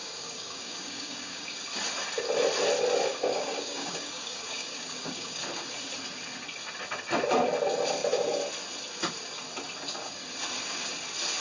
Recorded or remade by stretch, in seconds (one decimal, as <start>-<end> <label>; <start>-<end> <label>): 0.0-1.6 remade; 1.6-3.1 recorded; 3.1-5.4 remade; 5.4-11.4 recorded